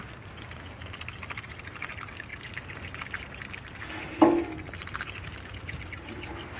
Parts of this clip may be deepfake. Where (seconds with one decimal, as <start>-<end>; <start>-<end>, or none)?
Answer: none